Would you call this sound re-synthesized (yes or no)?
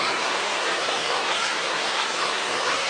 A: yes